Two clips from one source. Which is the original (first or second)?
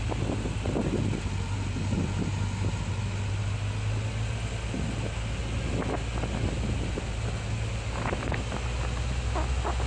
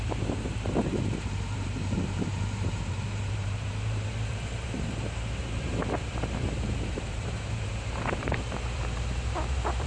first